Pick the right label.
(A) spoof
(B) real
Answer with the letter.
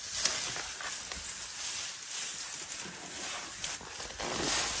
B